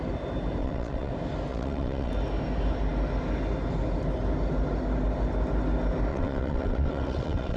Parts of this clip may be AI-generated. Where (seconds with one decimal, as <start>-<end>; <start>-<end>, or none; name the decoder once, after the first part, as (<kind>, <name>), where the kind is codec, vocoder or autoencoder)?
0.6-1.1 (vocoder, WaveNeXt); 1.5-2.1; 6.1-7.6